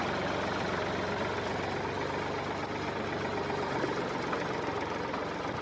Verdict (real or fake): real